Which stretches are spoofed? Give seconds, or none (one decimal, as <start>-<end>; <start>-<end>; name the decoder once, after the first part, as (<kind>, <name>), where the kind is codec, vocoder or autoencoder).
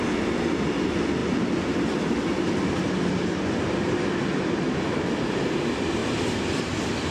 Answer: none